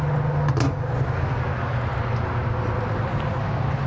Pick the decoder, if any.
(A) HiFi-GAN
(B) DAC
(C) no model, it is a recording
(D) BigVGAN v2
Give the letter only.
C